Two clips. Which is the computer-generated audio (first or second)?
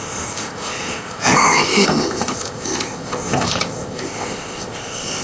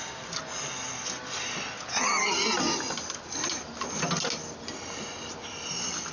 first